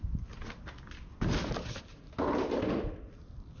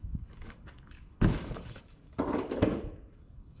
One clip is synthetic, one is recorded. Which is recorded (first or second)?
first